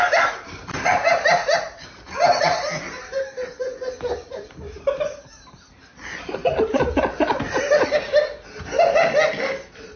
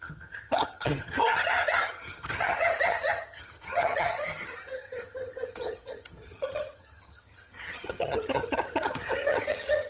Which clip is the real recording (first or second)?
first